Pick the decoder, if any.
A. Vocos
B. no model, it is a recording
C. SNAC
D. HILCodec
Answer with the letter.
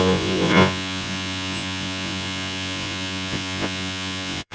A